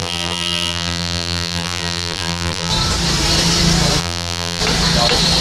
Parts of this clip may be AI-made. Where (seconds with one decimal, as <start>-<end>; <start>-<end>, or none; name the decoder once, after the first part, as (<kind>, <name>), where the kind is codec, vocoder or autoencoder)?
0.0-2.7 (vocoder, BigVGAN v2); 4.0-4.6